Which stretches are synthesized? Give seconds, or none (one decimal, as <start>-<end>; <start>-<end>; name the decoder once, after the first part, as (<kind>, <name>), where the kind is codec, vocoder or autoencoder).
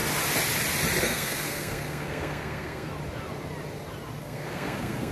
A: 1.0-2.9 (codec, SNAC); 4.2-5.1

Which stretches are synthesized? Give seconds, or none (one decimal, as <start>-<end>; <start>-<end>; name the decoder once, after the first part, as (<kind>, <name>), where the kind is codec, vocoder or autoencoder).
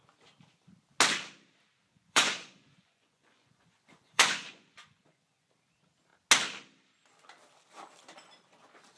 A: 1.9-5.5 (vocoder, Vocos)